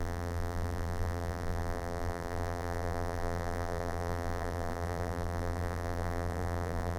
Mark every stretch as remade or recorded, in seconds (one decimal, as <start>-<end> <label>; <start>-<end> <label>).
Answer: 0.0-7.0 remade